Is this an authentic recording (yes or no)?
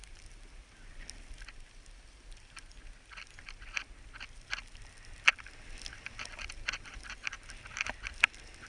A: yes